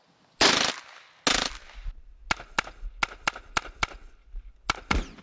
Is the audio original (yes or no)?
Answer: yes